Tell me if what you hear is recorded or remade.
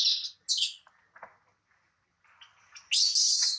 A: recorded